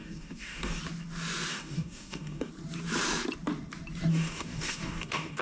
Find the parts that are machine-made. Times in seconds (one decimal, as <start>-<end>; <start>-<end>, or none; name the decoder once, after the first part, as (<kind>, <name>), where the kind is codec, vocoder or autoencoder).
0.0-0.8 (codec, DAC); 1.5-2.5; 4.1-5.4